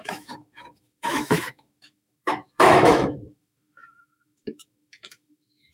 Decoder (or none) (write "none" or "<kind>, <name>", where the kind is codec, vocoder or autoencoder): autoencoder, DAC-VAE